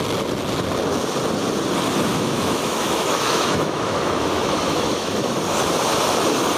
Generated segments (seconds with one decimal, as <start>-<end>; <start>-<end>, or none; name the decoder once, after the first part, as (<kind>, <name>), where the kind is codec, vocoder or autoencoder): 2.1-5.4 (autoencoder, DAC-VAE)